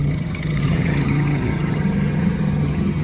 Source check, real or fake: fake